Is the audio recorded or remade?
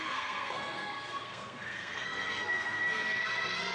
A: remade